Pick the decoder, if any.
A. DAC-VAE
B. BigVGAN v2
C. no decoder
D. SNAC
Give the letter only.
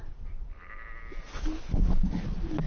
C